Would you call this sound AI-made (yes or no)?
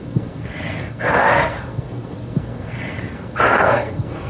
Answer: yes